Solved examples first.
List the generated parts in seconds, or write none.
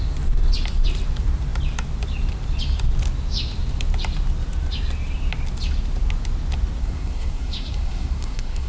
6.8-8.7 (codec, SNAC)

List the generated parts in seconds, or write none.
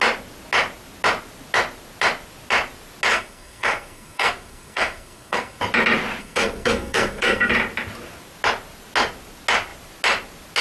3.1-5.6 (codec, SNAC); 6.2-7.5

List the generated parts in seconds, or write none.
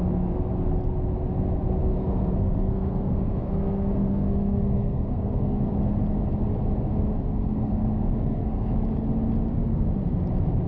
1.8-5.7 (codec, SNAC); 7.1-8.7